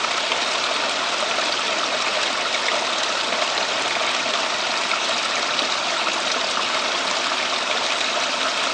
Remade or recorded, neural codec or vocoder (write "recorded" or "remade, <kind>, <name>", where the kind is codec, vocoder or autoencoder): recorded